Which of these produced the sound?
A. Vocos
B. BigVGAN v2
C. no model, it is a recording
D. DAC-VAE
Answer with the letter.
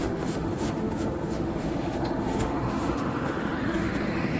D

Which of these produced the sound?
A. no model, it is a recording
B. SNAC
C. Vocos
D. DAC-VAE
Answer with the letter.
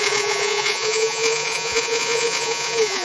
C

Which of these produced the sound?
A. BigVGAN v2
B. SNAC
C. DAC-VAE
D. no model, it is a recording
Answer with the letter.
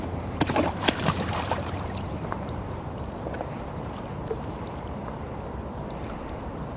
A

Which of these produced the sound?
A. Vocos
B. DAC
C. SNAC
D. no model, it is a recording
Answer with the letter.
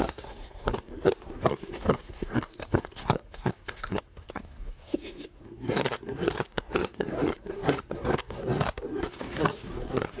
C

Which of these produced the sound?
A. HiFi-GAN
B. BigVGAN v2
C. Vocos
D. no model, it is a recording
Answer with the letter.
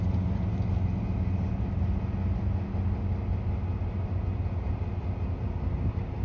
D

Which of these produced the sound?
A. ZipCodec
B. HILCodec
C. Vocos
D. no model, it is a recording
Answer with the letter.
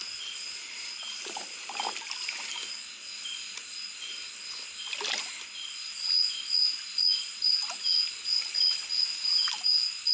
D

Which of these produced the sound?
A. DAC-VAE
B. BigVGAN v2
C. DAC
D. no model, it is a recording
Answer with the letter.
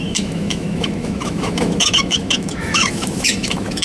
A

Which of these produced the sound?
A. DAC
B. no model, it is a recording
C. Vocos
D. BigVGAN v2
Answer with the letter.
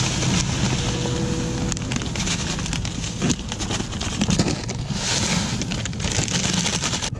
B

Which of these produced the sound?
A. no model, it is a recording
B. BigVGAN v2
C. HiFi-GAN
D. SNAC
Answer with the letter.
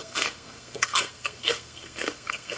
D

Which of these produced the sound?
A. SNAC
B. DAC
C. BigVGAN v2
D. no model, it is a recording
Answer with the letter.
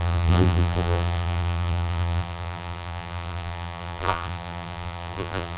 C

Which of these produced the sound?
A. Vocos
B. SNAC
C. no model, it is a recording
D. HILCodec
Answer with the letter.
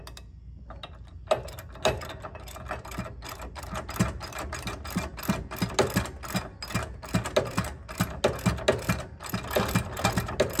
C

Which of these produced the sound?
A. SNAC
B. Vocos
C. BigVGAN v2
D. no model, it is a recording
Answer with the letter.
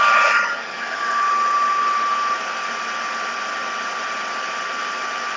D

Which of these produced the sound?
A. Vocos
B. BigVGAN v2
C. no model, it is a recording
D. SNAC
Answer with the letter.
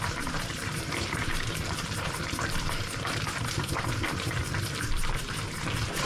B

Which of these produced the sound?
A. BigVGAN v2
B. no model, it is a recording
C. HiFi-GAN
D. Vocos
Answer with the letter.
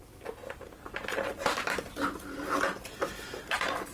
B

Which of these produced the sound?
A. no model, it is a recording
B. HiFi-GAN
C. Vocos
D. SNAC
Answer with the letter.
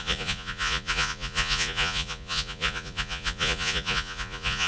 C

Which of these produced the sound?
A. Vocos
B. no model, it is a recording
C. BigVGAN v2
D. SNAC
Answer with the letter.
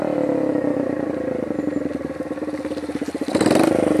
B